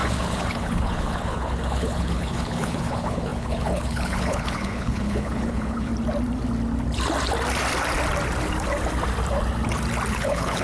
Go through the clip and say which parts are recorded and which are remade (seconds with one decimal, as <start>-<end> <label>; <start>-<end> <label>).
0.0-5.9 remade; 5.9-10.1 recorded; 10.1-10.6 remade